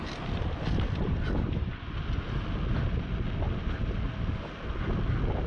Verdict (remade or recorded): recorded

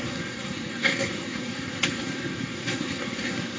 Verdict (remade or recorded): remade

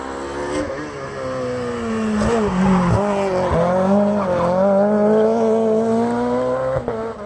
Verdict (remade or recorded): recorded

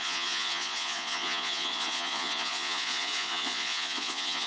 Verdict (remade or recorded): remade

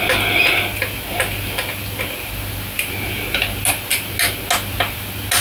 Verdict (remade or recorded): recorded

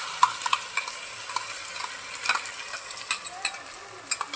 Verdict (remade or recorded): recorded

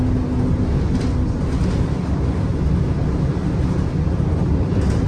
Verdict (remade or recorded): recorded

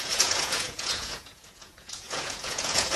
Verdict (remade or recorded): remade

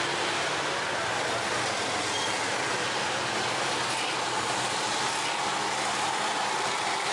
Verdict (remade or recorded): recorded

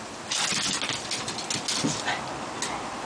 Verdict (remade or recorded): recorded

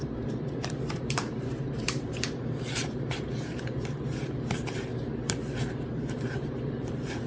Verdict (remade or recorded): remade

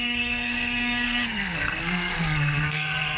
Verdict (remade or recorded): remade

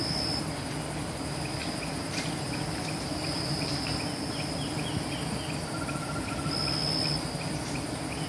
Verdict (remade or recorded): recorded